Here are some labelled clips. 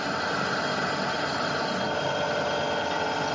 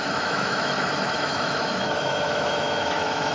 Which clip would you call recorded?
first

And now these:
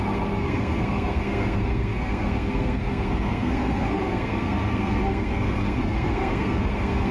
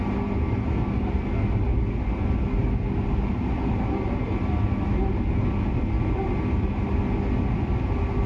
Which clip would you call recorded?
second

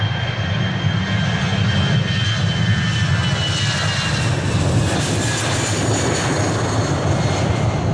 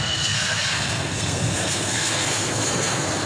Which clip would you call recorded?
first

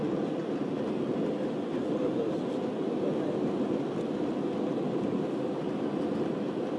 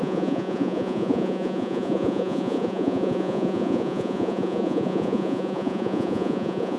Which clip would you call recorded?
first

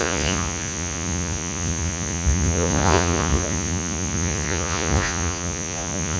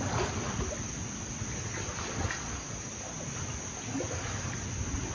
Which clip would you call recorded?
second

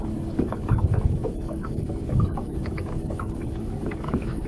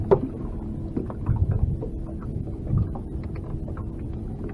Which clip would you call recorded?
second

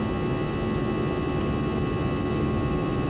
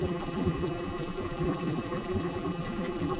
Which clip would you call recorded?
first